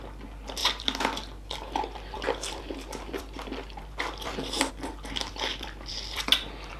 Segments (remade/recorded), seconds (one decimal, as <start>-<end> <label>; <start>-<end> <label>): 0.0-6.8 recorded